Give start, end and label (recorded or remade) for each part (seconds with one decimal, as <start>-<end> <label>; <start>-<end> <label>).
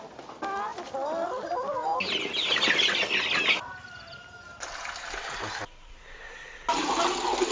0.0-7.5 recorded